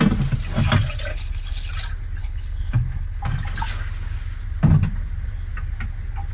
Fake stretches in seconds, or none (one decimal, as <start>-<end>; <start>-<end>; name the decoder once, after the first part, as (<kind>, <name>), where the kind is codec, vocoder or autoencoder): 1.1-1.7 (codec, HILCodec); 2.2-3.2